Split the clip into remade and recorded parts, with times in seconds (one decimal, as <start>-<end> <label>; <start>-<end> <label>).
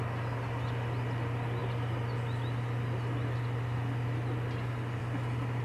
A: 0.0-5.6 recorded